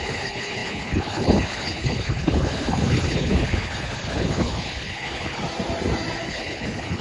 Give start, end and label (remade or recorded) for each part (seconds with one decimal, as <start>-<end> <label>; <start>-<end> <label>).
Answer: 0.0-5.4 remade; 5.4-6.3 recorded; 6.3-7.0 remade